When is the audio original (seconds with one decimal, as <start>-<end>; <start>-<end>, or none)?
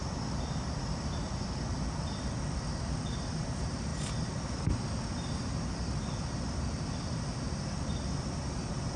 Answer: 0.0-9.0